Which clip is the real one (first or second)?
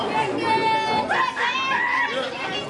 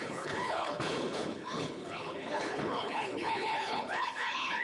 first